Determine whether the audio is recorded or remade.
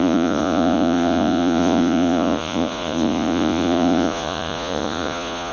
remade